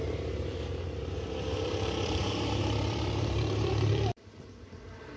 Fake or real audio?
fake